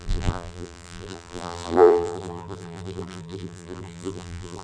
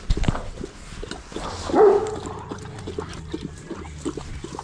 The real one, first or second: second